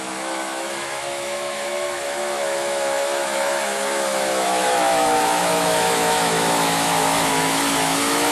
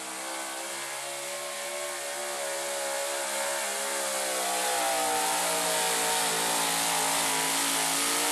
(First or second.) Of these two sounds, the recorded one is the second